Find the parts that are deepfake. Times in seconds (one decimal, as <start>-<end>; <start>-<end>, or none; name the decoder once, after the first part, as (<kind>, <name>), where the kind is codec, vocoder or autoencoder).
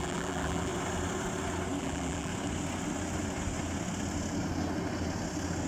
0.0-0.7 (vocoder, BigVGAN v2); 1.8-2.3